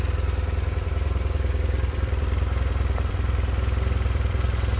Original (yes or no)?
no